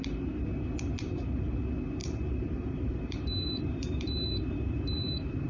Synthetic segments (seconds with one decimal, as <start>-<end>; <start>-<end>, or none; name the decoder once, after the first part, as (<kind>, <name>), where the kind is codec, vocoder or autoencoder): 2.0-5.5 (vocoder, BigVGAN v2)

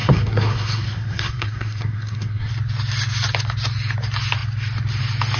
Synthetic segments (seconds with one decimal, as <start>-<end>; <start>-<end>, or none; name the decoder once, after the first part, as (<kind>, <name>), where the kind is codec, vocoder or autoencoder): 0.0-2.5 (codec, SNAC)

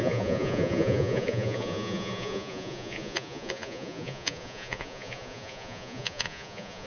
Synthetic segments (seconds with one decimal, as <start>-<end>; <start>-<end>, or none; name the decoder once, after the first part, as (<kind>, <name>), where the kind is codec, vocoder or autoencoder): 0.0-6.9 (vocoder, Vocos)

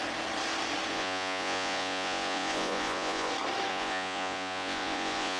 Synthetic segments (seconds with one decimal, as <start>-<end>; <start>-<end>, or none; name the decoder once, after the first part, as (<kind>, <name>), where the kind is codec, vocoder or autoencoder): 0.9-3.3 (vocoder, Vocos); 3.7-5.4

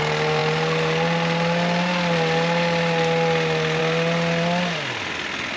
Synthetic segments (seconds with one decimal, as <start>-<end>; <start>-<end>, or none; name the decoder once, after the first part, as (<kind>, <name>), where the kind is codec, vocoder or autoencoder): none

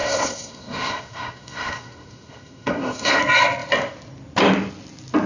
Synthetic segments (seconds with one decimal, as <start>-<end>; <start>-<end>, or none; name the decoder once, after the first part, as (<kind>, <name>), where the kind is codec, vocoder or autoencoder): 0.0-3.2 (codec, SNAC)

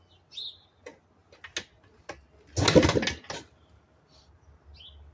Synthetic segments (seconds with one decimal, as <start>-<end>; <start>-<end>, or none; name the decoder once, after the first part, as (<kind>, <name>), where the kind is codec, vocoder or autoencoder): none

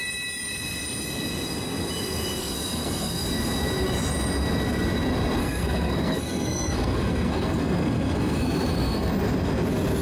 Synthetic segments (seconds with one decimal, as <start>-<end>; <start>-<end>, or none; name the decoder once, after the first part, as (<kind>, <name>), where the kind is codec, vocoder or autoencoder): 2.4-3.2 (codec, SNAC); 5.4-9.1